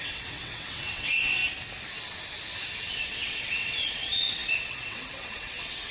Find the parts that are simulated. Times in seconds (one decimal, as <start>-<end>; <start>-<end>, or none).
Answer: 0.0-1.4; 2.9-5.9